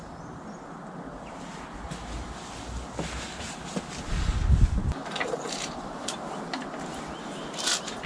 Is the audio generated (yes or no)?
no